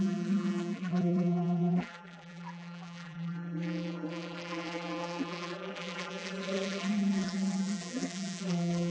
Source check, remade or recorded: remade